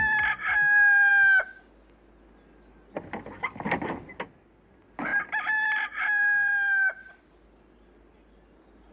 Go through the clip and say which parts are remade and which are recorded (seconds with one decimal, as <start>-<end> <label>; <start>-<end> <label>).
0.0-5.1 recorded; 5.1-7.2 remade; 7.2-8.9 recorded